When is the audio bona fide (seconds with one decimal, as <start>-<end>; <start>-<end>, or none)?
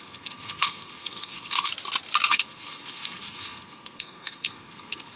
1.7-2.3